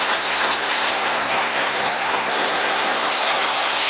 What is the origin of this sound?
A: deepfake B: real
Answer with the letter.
A